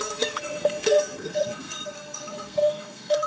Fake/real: fake